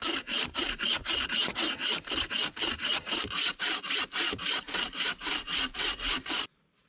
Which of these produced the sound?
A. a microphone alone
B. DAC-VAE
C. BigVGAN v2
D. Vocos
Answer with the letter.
C